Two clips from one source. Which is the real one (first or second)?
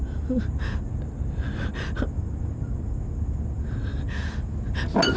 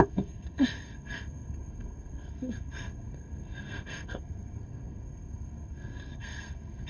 first